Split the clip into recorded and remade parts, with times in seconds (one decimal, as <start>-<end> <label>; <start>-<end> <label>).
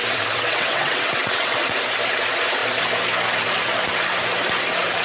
0.0-1.5 remade; 1.5-5.0 recorded